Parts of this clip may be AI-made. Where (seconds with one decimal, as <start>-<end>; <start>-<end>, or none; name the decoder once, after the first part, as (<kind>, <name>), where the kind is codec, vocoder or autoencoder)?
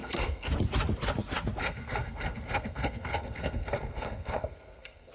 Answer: 0.0-0.5 (codec, SNAC); 1.6-5.1